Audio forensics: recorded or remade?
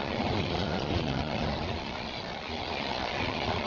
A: remade